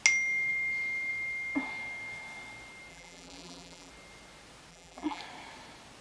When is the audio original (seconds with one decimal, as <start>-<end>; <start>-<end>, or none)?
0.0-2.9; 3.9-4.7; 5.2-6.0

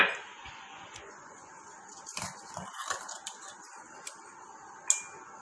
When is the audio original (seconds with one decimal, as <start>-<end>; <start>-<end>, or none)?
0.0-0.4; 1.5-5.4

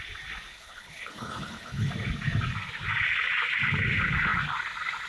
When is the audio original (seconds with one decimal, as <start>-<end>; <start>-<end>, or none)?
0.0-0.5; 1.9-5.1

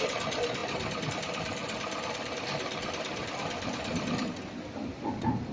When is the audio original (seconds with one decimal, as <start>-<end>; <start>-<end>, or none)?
0.0-5.5

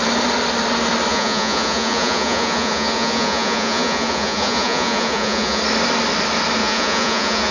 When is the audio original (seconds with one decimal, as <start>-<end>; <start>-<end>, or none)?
0.0-1.1; 5.6-6.6

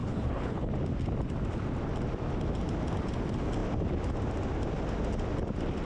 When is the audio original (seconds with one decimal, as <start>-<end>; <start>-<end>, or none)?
0.7-5.8

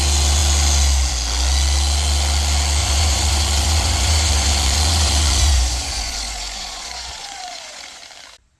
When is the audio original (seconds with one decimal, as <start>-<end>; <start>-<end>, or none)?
0.0-2.8; 8.0-8.6